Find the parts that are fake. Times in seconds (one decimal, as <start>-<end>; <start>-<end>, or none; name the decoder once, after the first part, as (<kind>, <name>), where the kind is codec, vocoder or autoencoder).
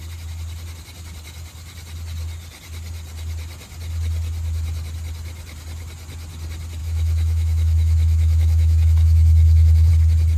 6.8-9.9 (autoencoder, DAC-VAE)